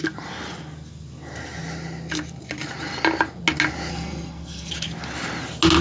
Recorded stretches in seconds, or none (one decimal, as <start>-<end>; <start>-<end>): 0.0-3.9; 4.7-5.8